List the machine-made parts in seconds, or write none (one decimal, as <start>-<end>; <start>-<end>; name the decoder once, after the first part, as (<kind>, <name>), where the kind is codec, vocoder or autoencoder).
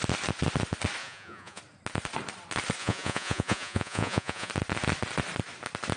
1.0-1.6 (vocoder, Vocos); 2.8-4.5